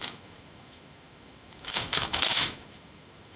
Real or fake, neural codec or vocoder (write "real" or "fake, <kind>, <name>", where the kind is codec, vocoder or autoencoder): fake, autoencoder, DAC-VAE